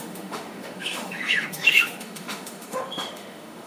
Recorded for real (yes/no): no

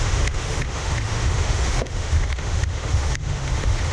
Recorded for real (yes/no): no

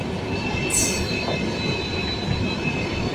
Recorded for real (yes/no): yes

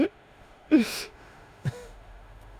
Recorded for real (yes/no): no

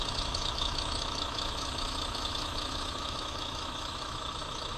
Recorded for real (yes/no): no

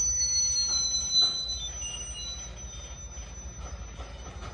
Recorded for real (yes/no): yes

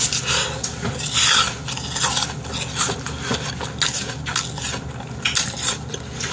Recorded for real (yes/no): yes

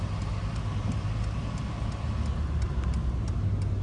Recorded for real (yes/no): yes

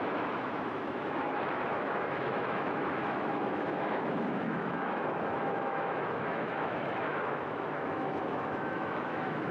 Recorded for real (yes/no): no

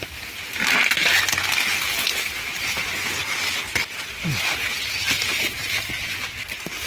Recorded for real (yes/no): yes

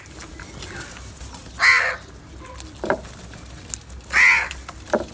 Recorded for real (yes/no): yes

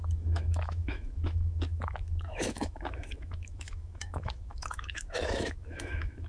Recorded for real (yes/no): no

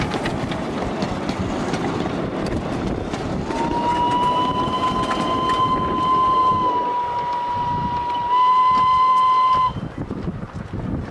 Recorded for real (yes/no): yes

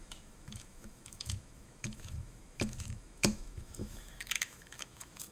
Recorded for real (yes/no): no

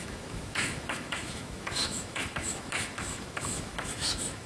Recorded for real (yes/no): no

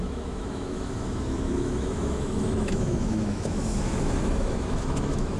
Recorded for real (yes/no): no